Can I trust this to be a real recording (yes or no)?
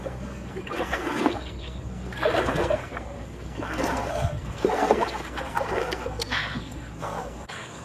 no